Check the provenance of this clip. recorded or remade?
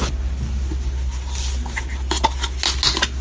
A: recorded